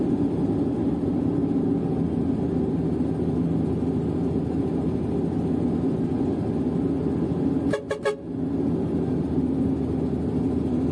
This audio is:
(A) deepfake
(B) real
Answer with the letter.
B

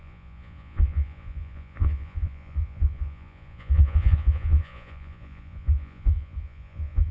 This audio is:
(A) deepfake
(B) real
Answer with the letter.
A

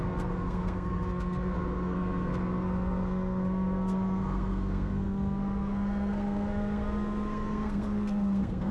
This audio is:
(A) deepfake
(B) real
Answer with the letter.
A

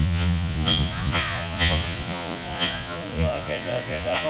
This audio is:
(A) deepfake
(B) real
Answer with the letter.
A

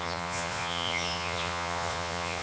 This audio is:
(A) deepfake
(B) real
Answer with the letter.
A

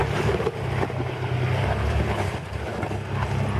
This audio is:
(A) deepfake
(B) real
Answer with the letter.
B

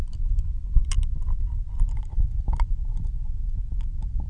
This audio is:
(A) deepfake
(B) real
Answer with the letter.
B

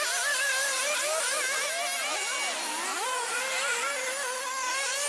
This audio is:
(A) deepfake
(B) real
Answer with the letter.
B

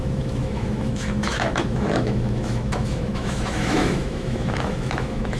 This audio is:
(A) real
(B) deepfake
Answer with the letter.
B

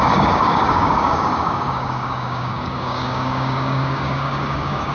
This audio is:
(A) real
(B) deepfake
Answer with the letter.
B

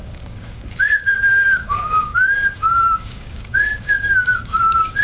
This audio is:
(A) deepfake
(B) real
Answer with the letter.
A